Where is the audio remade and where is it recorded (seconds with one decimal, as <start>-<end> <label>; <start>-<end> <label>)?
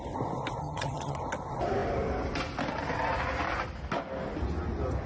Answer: 0.0-0.6 recorded; 0.6-1.2 remade; 1.2-5.1 recorded